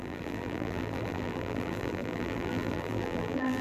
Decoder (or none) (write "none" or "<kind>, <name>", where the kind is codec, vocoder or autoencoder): vocoder, BigVGAN v2